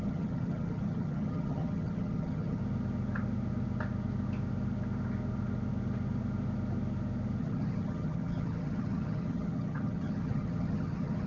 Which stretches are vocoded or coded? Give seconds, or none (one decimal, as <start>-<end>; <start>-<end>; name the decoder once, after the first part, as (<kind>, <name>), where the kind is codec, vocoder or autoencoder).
0.0-2.6 (vocoder, HiFi-GAN); 7.4-11.3

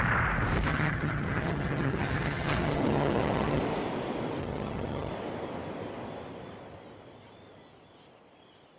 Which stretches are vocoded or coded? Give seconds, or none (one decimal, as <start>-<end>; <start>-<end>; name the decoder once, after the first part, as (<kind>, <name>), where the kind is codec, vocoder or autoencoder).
0.7-3.6 (vocoder, HiFi-GAN); 4.4-5.1

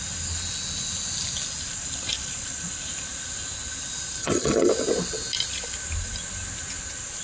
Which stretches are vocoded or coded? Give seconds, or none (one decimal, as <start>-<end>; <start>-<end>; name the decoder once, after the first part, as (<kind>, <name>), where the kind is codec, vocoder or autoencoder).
4.2-4.7 (vocoder, HiFi-GAN)

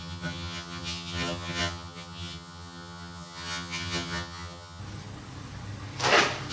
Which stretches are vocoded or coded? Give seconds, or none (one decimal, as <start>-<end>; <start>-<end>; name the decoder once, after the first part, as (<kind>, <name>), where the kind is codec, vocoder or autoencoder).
0.0-4.8 (vocoder, HiFi-GAN)

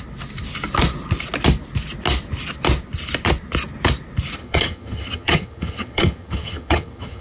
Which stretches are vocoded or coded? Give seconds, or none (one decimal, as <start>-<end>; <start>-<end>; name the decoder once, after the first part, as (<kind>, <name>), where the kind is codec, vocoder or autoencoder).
4.4-7.2 (vocoder, HiFi-GAN)